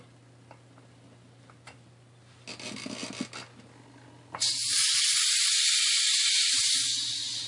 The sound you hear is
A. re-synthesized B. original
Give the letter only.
B